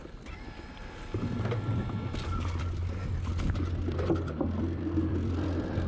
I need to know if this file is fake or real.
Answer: real